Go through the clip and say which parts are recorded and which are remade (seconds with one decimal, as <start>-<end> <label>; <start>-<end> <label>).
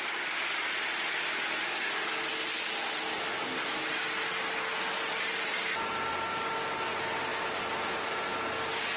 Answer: 0.0-9.0 recorded